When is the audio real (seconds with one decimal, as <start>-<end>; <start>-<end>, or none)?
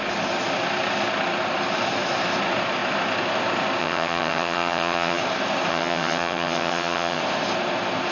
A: 0.0-3.8; 5.2-5.7; 7.2-8.1